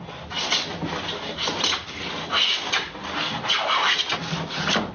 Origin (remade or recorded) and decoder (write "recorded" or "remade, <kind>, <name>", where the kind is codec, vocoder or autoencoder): recorded